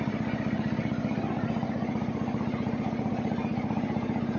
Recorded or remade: remade